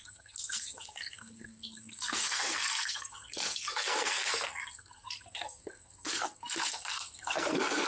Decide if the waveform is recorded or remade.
remade